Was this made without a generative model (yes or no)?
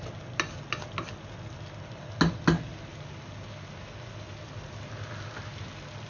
yes